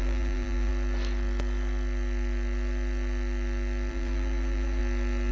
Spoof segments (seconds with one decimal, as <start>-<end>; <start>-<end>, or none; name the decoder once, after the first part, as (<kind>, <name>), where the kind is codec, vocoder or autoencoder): 0.0-0.7 (vocoder, BigVGAN v2); 3.9-4.8